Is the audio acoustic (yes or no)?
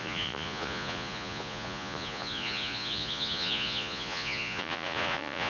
no